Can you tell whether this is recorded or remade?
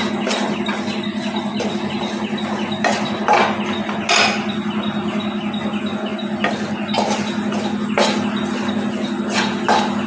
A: recorded